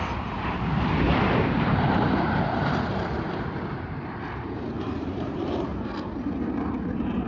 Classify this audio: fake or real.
fake